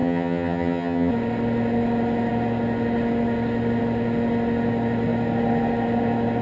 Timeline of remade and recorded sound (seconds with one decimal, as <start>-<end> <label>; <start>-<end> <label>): 0.0-1.1 remade; 1.1-6.4 recorded